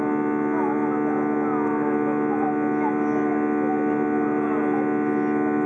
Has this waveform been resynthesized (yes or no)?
no